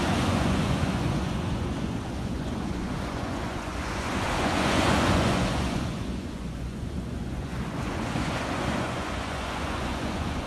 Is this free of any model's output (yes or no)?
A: no